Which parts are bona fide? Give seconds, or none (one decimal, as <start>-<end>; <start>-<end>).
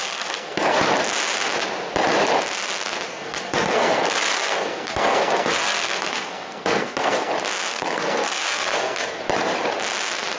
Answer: 0.8-3.1; 7.3-7.7; 9.2-10.4